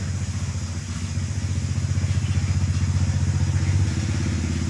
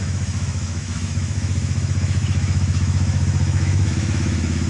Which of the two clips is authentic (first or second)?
first